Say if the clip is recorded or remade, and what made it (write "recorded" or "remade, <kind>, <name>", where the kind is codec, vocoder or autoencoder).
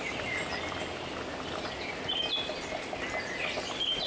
recorded